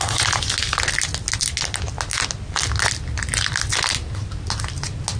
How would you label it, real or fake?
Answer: real